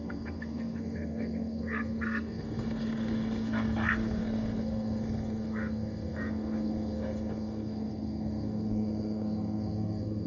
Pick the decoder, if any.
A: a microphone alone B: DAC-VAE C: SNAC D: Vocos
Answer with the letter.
C